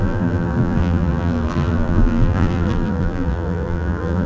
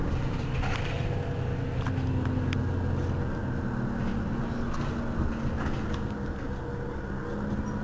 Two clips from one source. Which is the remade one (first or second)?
first